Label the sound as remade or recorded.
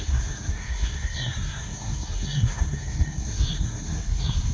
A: remade